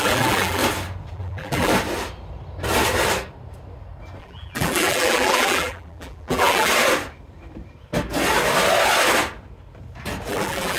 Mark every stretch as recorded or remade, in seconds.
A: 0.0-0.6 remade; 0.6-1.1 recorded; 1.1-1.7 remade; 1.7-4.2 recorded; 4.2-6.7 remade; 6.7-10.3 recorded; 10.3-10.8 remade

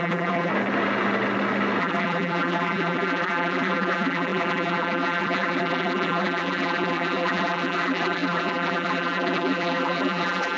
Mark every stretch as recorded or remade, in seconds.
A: 0.0-0.5 remade; 0.5-1.8 recorded; 1.8-10.6 remade

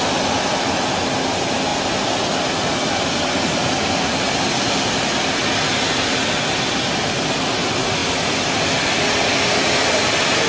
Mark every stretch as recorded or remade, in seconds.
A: 0.0-10.5 recorded